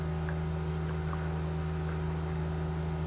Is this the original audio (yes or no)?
yes